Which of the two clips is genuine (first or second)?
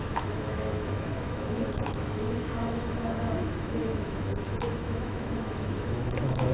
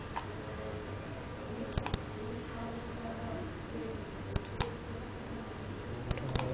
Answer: second